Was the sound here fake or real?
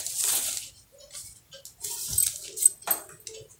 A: real